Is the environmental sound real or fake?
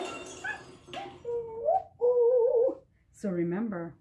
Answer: real